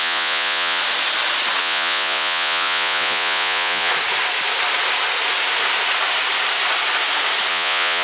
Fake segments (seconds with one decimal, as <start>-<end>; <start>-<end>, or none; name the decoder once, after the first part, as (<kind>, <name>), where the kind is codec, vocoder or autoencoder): 0.0-0.8 (vocoder, Vocos); 1.6-3.9; 7.5-8.0